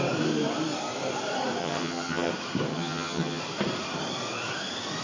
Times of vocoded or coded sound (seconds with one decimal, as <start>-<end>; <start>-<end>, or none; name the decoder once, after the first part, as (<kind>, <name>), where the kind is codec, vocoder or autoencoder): 1.6-2.3 (vocoder, HiFi-GAN); 2.7-3.4